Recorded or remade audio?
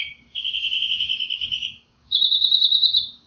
remade